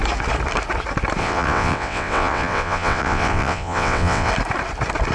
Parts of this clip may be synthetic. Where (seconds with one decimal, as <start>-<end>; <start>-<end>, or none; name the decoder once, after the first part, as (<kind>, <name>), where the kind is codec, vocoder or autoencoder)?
1.2-4.3 (vocoder, WaveNeXt)